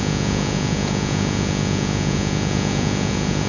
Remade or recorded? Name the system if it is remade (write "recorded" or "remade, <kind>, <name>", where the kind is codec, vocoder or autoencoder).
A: remade, vocoder, Vocos